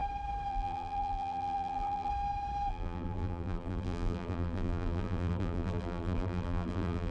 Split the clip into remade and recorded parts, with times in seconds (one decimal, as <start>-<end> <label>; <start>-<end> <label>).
0.0-0.5 recorded; 0.5-2.1 remade; 2.1-2.7 recorded; 2.7-7.1 remade